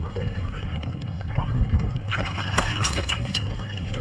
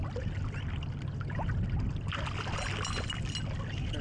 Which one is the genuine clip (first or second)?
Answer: second